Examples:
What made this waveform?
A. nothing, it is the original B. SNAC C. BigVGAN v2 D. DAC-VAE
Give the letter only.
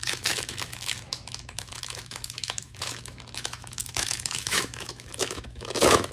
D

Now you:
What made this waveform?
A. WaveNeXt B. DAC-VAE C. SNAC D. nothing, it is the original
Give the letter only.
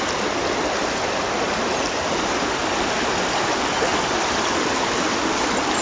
D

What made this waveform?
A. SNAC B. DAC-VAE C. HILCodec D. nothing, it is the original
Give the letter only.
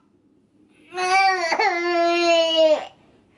D